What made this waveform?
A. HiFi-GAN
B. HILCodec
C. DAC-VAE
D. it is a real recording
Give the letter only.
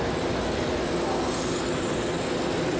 D